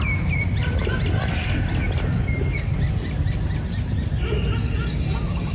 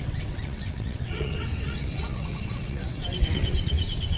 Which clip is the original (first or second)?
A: first